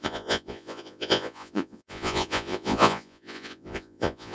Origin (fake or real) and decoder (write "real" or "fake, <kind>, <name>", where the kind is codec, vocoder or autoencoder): fake, vocoder, Vocos